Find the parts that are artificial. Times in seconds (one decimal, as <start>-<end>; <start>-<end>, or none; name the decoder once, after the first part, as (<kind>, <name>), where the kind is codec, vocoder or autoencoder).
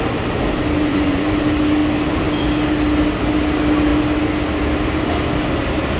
0.9-1.4 (vocoder, Vocos)